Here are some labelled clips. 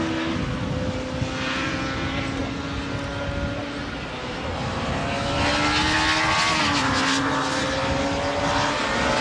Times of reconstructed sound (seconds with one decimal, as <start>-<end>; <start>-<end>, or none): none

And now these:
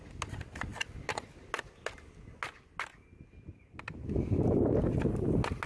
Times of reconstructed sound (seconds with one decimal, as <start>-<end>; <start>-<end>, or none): none

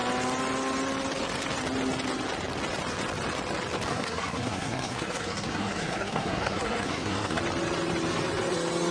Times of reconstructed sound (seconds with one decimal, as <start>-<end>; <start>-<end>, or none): 3.9-7.4

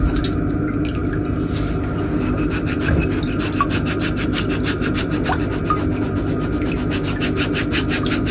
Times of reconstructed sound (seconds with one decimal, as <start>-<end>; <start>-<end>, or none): none

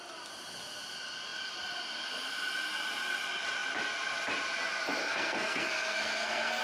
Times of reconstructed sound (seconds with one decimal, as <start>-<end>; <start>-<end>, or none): 5.0-6.6

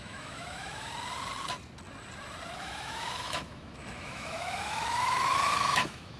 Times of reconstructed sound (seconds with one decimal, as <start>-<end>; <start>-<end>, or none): 0.0-0.9; 2.6-6.2

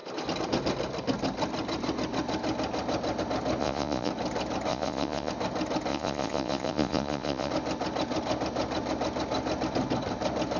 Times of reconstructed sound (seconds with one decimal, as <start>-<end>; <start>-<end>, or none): 3.6-4.1; 4.7-5.3; 5.9-7.5